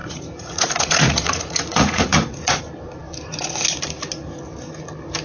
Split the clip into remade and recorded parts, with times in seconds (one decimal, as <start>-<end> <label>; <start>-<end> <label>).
0.0-2.6 remade; 2.6-5.2 recorded